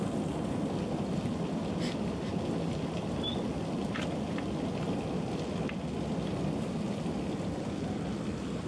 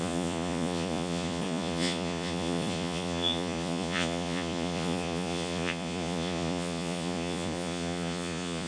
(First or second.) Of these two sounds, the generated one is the second